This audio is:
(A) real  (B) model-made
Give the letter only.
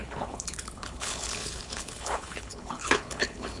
B